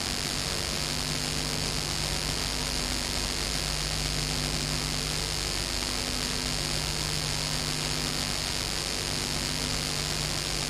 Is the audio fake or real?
real